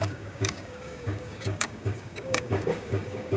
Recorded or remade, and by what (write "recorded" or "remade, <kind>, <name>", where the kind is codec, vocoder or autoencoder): remade, codec, DAC